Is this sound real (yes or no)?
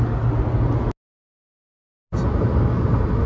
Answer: yes